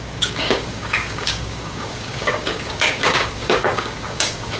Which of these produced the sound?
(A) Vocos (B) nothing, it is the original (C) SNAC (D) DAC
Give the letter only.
D